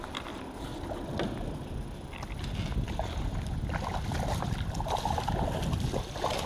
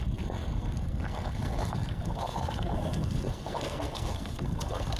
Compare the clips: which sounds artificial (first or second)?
second